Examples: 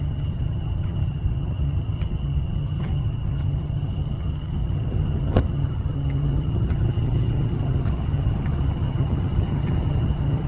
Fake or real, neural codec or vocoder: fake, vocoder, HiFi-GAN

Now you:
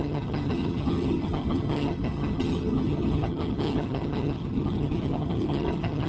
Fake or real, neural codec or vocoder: fake, vocoder, HiFi-GAN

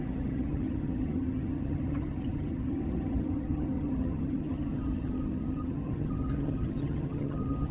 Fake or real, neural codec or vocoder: fake, vocoder, HiFi-GAN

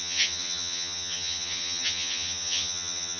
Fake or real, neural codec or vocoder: fake, vocoder, HiFi-GAN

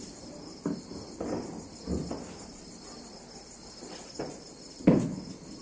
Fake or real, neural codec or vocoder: real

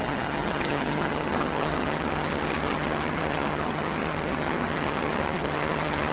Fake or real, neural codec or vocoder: fake, vocoder, HiFi-GAN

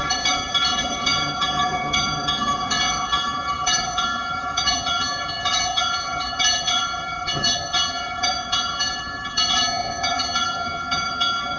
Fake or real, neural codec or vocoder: fake, vocoder, HiFi-GAN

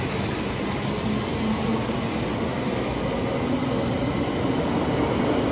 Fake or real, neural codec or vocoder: real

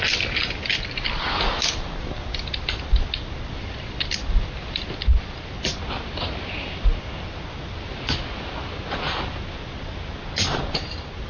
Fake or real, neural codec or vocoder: real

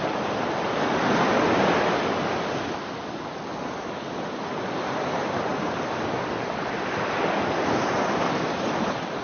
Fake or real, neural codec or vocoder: real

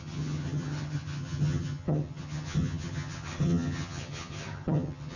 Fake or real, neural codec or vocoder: fake, vocoder, HiFi-GAN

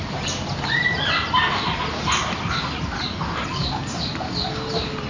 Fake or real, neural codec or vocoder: real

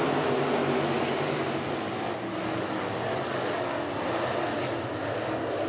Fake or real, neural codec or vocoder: real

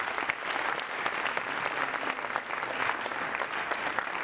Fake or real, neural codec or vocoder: real